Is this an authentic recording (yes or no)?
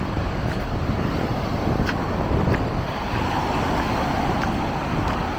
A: yes